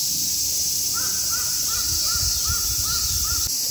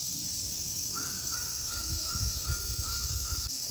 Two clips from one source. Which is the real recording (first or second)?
first